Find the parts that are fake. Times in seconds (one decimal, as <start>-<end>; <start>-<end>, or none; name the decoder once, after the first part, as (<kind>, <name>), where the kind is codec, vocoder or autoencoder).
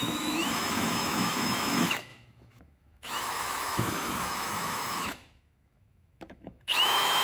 0.0-7.2 (autoencoder, DAC-VAE)